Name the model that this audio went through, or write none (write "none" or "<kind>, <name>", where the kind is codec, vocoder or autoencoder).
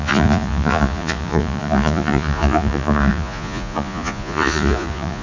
vocoder, Vocos